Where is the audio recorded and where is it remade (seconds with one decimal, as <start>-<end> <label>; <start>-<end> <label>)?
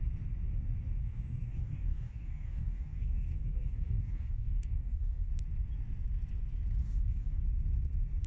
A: 0.0-1.0 recorded; 1.0-5.3 remade; 5.3-6.8 recorded; 6.8-7.4 remade; 7.4-8.3 recorded